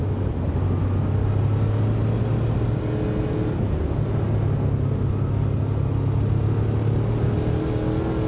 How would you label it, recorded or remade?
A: recorded